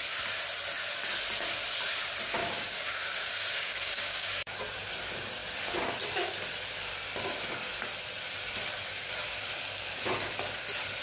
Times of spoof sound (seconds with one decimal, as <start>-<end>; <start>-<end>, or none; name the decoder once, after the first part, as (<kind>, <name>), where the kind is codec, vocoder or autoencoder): 2.4-4.6 (codec, DAC)